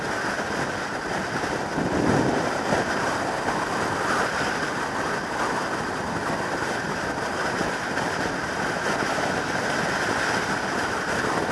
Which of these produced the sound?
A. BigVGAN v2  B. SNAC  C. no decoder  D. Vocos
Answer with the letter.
C